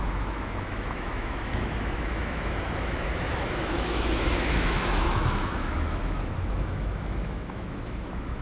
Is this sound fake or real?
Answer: fake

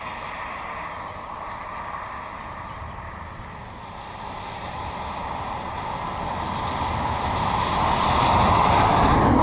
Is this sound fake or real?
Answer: real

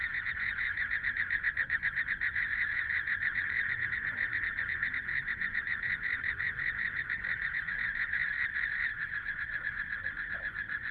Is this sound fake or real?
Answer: fake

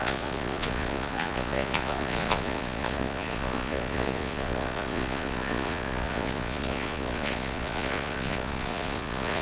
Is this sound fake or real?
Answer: fake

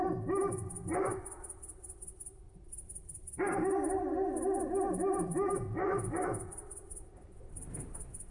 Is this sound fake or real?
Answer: real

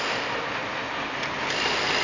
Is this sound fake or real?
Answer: real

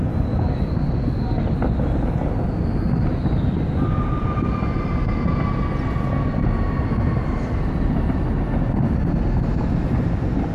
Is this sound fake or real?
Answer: real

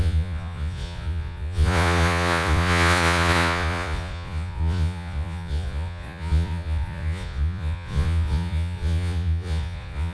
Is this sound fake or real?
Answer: fake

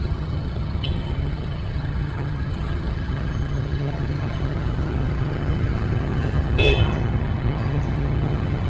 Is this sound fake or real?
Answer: fake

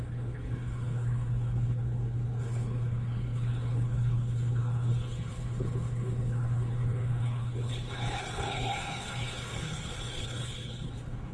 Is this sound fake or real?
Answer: fake